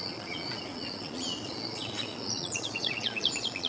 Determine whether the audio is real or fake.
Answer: fake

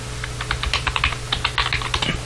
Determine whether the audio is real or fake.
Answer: real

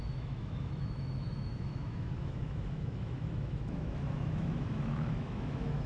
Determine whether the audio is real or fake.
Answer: fake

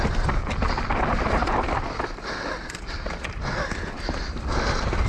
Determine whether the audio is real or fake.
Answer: real